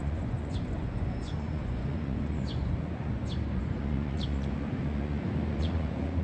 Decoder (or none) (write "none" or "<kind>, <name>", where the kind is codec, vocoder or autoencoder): vocoder, Vocos